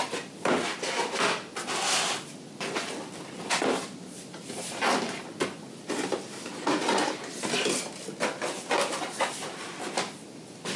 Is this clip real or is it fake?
real